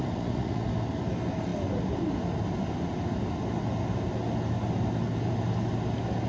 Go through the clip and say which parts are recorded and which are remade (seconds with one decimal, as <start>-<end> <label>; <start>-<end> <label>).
0.0-0.7 remade; 0.7-6.3 recorded